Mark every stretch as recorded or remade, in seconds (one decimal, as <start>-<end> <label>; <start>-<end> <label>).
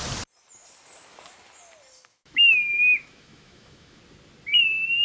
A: 0.0-2.1 recorded; 2.1-4.0 remade; 4.0-5.0 recorded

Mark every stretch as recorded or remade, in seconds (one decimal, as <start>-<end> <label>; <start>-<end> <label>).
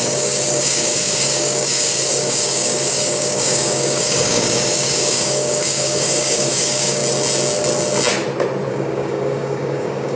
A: 0.0-7.0 remade; 7.0-8.7 recorded; 8.7-10.2 remade